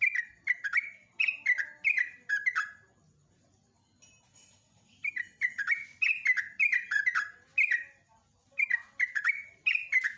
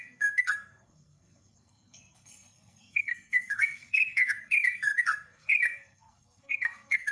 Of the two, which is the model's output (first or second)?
second